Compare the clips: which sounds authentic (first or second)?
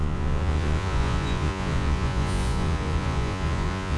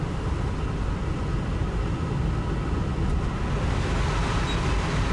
second